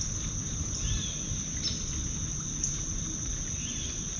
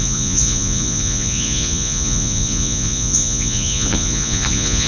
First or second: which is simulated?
second